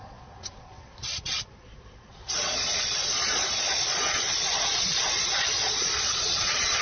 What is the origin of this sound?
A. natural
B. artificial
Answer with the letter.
B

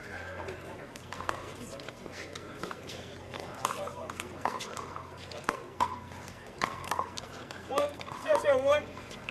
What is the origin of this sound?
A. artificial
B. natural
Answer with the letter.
A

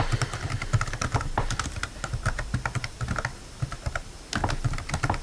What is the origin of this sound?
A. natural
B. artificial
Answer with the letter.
A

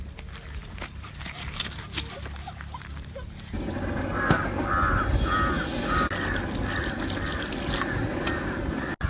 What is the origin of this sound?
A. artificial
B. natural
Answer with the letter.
B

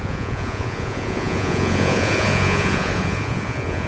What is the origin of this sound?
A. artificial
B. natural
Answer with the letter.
A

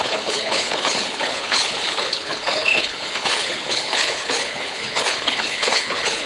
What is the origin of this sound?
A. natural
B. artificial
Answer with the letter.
B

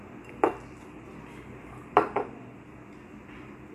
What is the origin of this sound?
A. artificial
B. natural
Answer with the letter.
A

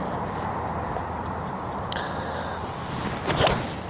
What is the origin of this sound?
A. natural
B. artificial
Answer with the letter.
A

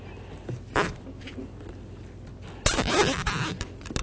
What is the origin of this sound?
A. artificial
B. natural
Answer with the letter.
B